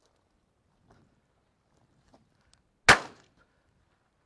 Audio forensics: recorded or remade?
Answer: recorded